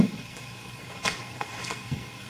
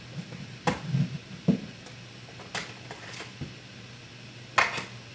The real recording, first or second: second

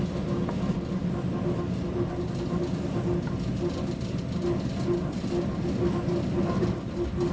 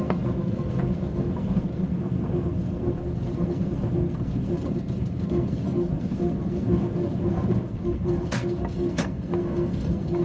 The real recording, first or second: first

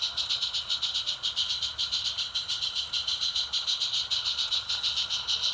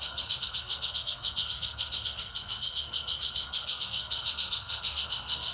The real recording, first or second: first